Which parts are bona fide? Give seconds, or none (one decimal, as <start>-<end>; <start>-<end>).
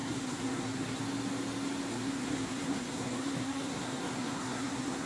1.0-1.9